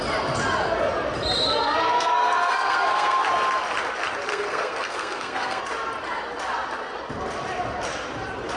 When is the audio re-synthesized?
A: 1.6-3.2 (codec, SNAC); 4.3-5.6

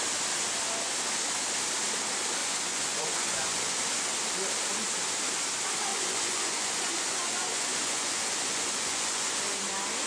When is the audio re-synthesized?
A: 2.4-3.8 (vocoder, Vocos); 5.9-9.6

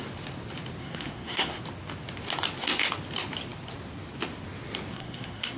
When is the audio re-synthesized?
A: 0.8-1.6 (codec, SNAC); 4.9-5.6

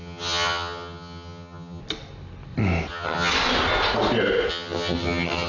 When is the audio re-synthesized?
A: 0.0-1.8 (vocoder, HiFi-GAN); 2.9-3.3; 4.5-5.5